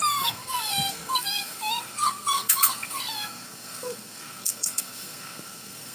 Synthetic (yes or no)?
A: yes